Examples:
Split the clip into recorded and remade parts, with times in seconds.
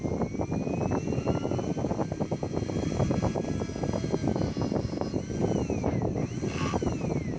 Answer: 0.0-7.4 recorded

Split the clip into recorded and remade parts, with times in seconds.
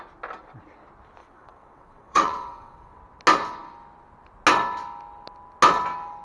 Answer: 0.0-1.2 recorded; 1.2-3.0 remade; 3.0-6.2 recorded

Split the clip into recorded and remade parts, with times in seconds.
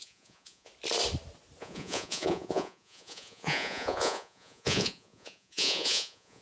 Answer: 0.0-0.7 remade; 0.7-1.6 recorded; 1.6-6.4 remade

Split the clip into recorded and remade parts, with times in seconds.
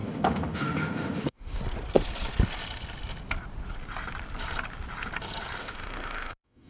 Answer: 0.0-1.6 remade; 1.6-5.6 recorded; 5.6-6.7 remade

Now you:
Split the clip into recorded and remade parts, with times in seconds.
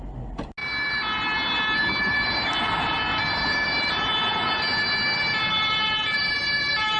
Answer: 0.0-7.0 recorded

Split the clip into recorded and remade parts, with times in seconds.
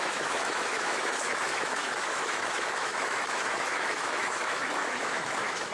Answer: 0.0-5.7 remade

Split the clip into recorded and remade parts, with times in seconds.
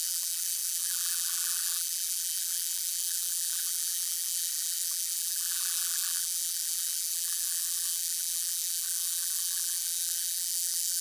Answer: 0.0-11.0 remade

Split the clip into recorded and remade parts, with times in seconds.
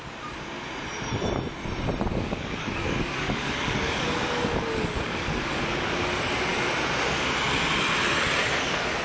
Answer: 0.0-2.1 recorded; 2.1-6.1 remade; 6.1-9.0 recorded